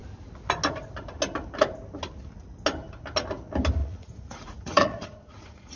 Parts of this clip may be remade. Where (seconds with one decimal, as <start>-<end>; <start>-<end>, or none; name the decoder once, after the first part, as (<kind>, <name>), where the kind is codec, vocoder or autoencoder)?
3.8-5.8 (vocoder, Vocos)